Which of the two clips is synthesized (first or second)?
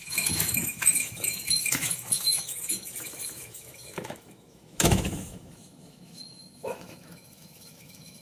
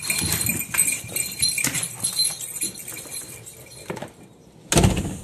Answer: first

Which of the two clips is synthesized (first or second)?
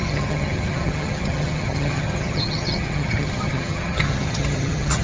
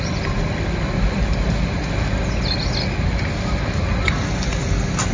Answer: first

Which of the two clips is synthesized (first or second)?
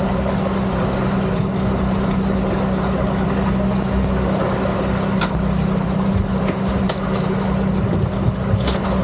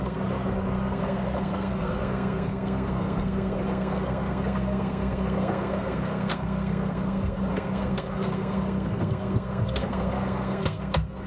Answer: second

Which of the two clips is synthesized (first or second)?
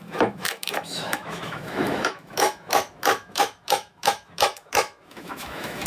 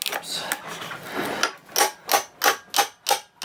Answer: first